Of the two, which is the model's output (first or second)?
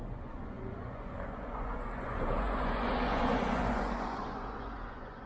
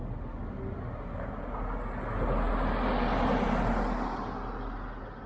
first